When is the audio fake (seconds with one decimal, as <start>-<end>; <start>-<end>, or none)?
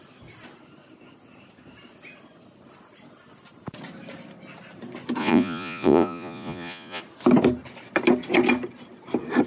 5.2-7.0